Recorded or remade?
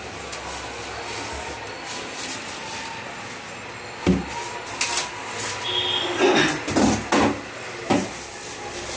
recorded